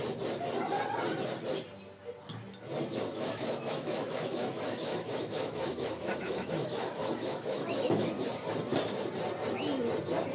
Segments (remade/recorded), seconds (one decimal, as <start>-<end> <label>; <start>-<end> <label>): 0.0-3.1 recorded; 3.1-8.1 remade; 8.1-10.3 recorded